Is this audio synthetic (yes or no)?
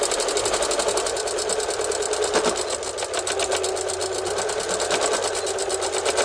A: no